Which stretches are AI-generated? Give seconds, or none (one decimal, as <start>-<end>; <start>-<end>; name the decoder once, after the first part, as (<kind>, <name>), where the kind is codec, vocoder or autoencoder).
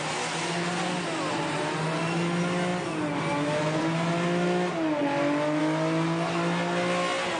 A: none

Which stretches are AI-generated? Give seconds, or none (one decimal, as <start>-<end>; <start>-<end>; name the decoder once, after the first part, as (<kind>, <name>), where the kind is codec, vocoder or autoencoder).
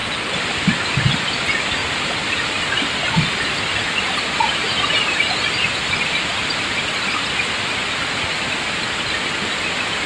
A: 1.8-2.5 (vocoder, BigVGAN v2)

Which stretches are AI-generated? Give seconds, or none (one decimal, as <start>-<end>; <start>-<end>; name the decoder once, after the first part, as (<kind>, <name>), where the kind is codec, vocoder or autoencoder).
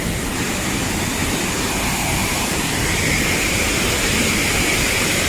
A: 1.2-3.1 (vocoder, BigVGAN v2)